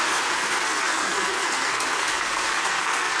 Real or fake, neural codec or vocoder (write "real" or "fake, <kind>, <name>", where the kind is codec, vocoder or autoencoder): fake, codec, SNAC